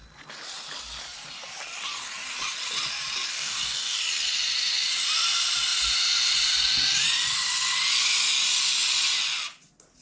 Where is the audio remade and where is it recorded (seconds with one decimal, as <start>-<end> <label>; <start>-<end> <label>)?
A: 0.0-3.3 recorded; 3.3-4.0 remade; 4.0-10.0 recorded

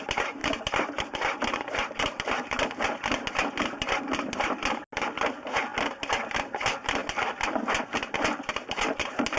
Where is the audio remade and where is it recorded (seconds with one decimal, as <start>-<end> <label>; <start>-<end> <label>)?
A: 0.0-9.4 recorded

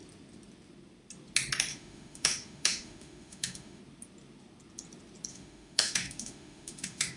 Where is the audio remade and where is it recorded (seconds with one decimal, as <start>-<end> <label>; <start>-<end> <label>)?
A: 0.0-1.7 recorded; 1.7-3.8 remade; 3.8-5.3 recorded; 5.3-7.2 remade

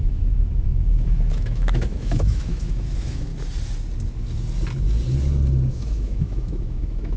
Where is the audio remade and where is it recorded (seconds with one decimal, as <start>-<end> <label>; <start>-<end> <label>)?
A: 0.0-3.3 remade; 3.3-5.7 recorded; 5.7-7.2 remade

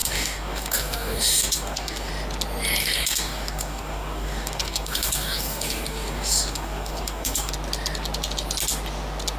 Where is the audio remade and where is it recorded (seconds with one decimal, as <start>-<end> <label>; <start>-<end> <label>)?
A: 0.0-2.1 remade; 2.1-2.8 recorded; 2.8-7.5 remade; 7.5-9.4 recorded

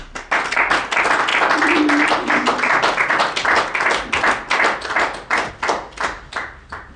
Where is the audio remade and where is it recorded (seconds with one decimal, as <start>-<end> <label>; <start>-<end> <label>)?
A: 0.0-7.0 recorded

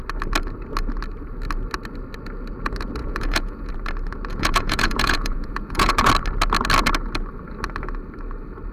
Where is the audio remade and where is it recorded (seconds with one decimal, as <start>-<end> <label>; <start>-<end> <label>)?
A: 0.0-3.0 recorded; 3.0-3.7 remade; 3.7-4.3 recorded; 4.3-6.1 remade; 6.1-8.7 recorded

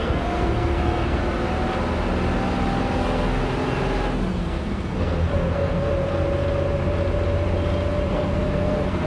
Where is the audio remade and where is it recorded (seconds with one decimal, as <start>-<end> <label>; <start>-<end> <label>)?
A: 0.0-1.2 remade; 1.2-2.8 recorded; 2.8-3.4 remade; 3.4-4.3 recorded; 4.3-5.9 remade; 5.9-8.1 recorded; 8.1-9.1 remade